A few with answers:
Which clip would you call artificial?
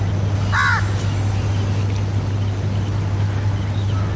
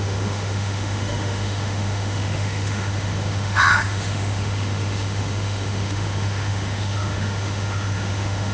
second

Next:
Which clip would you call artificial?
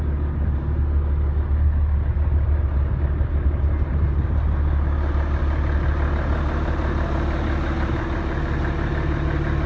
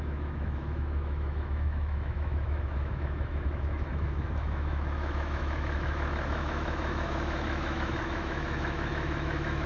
second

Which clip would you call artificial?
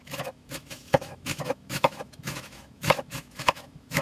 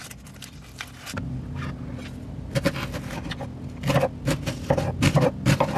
first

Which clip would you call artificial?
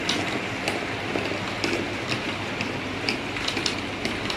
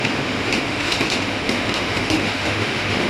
second